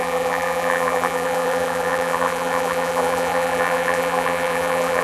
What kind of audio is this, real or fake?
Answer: fake